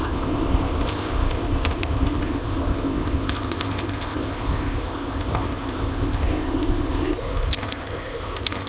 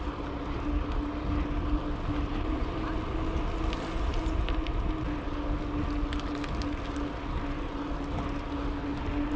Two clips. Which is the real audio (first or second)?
second